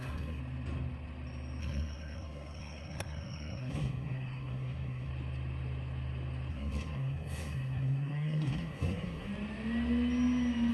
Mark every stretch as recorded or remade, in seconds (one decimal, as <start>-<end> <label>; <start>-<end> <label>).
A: 0.0-0.4 remade; 0.4-1.6 recorded; 1.6-5.1 remade; 5.1-6.5 recorded; 6.5-9.3 remade; 9.3-10.7 recorded